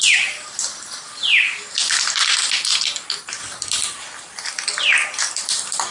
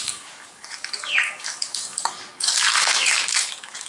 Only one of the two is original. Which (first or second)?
first